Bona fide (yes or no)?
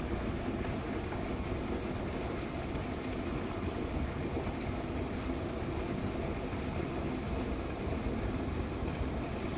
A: yes